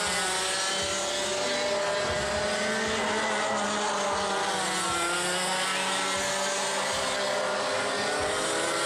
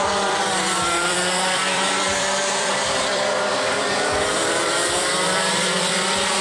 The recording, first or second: first